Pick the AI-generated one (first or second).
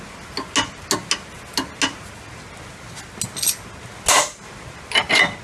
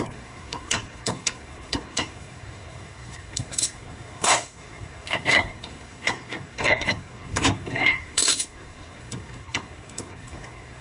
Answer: second